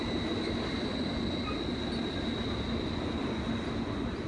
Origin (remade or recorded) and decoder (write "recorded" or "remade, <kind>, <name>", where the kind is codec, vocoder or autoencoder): recorded